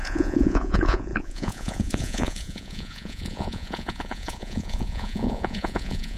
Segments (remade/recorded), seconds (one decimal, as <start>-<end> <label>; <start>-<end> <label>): 0.0-6.2 remade